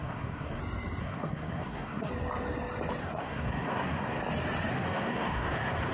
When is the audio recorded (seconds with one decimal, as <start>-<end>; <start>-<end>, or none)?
0.6-1.0; 2.1-3.0; 4.2-4.7